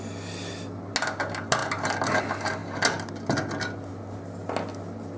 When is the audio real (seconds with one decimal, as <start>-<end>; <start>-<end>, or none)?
0.0-5.2

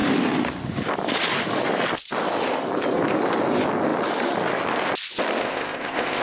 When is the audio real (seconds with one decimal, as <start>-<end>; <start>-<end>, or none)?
0.0-5.4

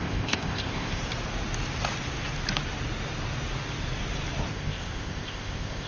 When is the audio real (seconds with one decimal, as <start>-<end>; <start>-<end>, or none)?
1.0-4.5

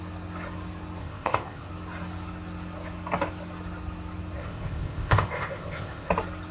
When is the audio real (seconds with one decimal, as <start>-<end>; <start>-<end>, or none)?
0.0-1.0; 1.7-4.4; 6.1-6.5

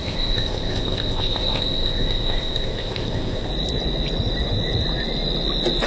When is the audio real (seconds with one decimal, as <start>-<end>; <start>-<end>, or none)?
3.5-5.9

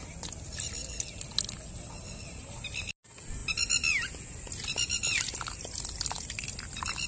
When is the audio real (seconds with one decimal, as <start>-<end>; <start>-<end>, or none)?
0.0-7.1

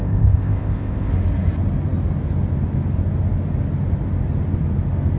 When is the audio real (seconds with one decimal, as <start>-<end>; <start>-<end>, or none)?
1.1-5.2